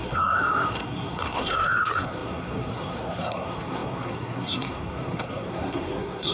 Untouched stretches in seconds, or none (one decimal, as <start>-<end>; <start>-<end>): none